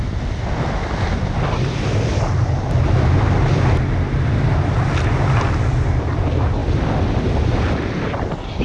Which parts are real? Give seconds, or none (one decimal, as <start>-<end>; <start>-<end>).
0.0-8.6

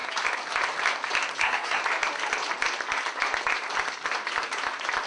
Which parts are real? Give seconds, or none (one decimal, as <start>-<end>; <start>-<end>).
0.0-1.4; 1.8-5.1

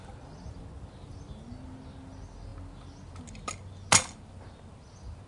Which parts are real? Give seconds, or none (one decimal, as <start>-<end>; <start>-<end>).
0.0-5.3

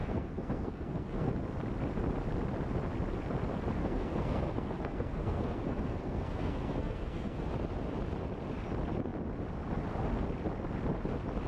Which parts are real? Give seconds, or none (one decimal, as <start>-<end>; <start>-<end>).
1.3-3.8; 7.5-11.5